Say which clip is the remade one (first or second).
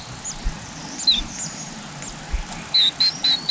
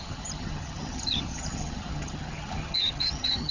second